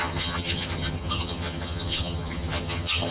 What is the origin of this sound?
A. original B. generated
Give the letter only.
B